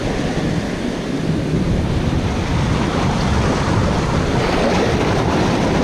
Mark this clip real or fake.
real